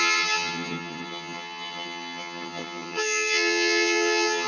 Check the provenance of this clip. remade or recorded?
remade